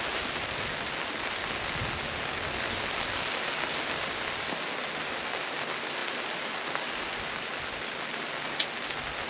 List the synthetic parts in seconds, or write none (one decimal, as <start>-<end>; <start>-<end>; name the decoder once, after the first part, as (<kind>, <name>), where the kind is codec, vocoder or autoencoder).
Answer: none